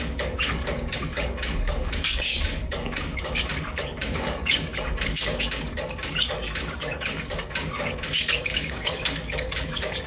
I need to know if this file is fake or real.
fake